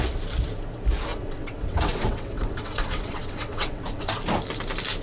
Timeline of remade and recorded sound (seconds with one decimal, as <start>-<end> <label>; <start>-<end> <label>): 0.0-1.1 recorded; 1.1-4.1 remade; 4.1-5.0 recorded